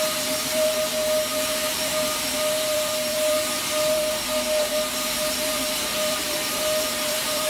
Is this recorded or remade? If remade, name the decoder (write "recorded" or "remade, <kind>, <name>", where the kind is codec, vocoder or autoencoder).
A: remade, vocoder, BigVGAN v2